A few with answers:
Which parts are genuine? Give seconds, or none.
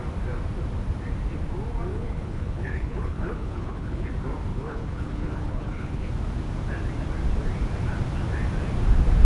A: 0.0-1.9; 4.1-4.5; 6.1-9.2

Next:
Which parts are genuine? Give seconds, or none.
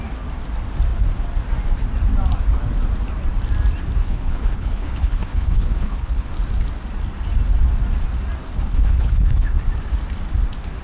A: 0.0-4.0; 6.4-8.5; 9.6-10.8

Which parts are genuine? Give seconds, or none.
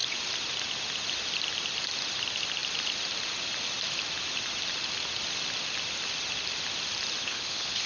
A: 0.0-7.2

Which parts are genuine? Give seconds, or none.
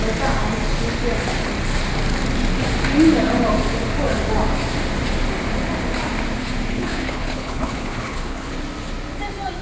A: 0.0-6.7; 8.5-9.6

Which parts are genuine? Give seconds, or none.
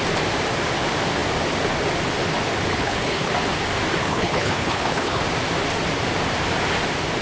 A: 0.0-2.7; 3.3-4.0; 5.2-7.2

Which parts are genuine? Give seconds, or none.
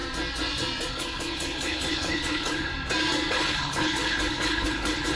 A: 0.0-0.9; 2.7-3.3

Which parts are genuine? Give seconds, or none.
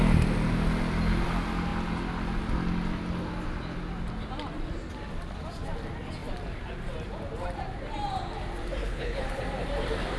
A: 0.0-8.8; 9.4-10.2